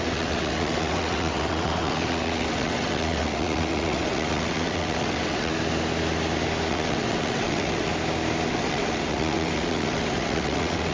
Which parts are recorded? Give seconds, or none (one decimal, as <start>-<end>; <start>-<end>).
5.5-6.7; 7.9-8.5